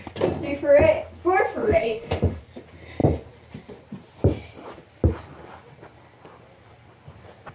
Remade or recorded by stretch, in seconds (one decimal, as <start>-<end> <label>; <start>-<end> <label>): 0.0-1.6 recorded; 1.6-2.4 remade; 2.4-7.5 recorded